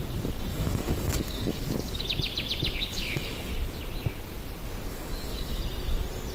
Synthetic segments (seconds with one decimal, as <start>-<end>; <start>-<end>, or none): 0.5-2.0; 2.9-3.5; 4.9-5.6